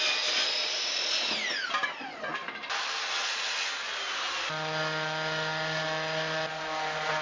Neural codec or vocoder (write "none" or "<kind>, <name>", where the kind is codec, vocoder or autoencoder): none